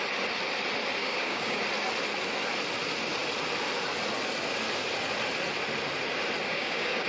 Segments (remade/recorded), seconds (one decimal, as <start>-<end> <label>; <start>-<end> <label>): 0.0-1.0 recorded; 1.0-1.6 remade; 1.6-6.5 recorded; 6.5-7.1 remade